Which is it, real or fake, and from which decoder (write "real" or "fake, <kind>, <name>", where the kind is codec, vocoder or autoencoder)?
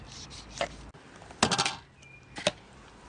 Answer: real